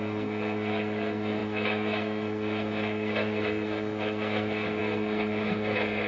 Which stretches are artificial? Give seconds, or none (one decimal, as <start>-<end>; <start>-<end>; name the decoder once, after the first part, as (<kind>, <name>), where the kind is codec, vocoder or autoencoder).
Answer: 0.0-6.1 (codec, SNAC)